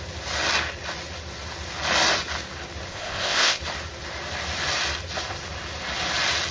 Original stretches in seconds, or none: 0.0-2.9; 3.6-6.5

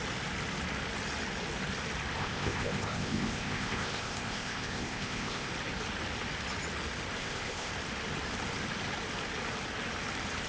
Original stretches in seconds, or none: 0.0-2.2; 5.5-7.2; 7.7-10.5

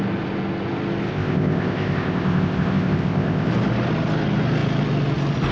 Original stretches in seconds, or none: 0.0-1.1; 3.5-5.5

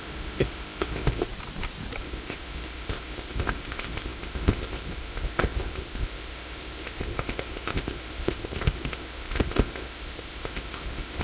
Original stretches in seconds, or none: 1.2-2.0

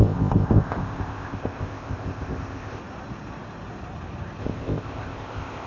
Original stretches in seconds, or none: 2.8-4.4

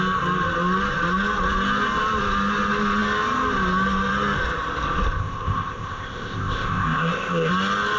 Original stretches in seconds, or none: 0.0-5.2; 7.5-8.0

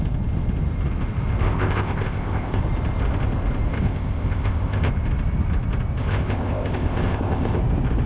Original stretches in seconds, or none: 0.0-1.4; 2.6-3.7; 4.9-6.0; 7.6-8.1

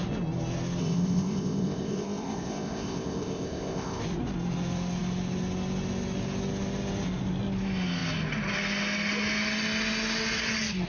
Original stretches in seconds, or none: 0.0-0.8; 4.0-10.9